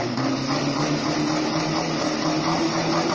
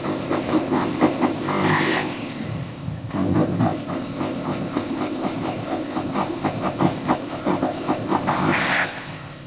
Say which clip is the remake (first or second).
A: second